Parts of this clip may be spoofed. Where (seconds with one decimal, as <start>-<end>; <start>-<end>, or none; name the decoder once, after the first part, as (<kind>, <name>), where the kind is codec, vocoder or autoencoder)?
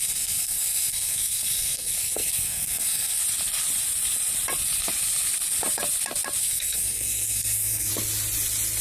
0.0-3.2 (codec, SNAC); 6.4-7.9